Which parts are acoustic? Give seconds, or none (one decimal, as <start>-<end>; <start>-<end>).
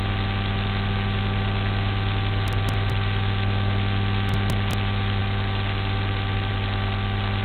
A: 0.0-7.4